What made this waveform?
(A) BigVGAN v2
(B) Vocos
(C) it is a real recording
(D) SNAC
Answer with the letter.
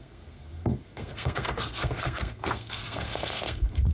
D